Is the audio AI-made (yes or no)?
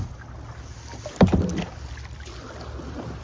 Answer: no